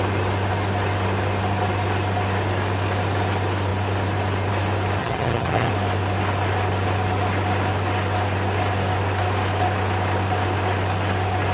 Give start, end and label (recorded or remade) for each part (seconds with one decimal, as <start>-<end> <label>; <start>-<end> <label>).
0.0-5.0 recorded; 5.0-5.7 remade; 5.7-11.5 recorded